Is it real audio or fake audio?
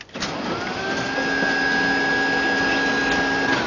real